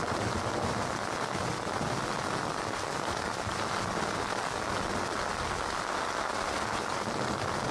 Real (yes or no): yes